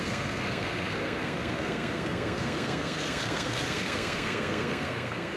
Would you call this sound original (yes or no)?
no